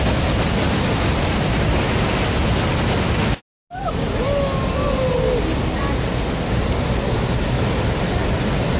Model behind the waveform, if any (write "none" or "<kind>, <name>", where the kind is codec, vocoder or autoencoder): none